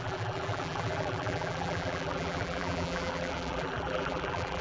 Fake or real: fake